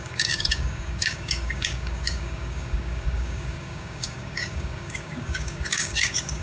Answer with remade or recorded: remade